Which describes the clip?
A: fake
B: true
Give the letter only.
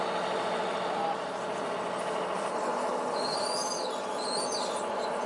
B